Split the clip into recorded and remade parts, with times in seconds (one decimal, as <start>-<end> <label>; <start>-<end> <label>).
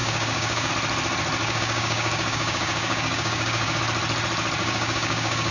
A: 0.0-0.7 remade; 0.7-1.4 recorded; 1.4-3.8 remade; 3.8-4.6 recorded; 4.6-5.5 remade